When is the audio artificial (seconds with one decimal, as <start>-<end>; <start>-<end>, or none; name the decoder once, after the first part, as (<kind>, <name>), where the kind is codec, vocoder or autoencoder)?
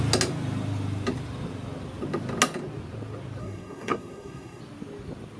3.4-4.6 (codec, SNAC)